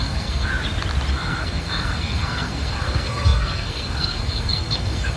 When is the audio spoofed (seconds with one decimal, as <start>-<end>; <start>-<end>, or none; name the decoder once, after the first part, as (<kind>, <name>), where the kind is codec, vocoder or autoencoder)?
0.0-0.5 (codec, SNAC); 1.1-5.2